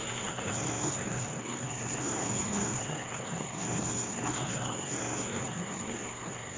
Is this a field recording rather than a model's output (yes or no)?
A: no